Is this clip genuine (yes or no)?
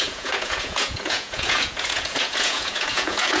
no